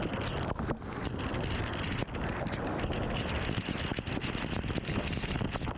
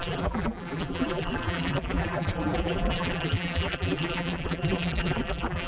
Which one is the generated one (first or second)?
second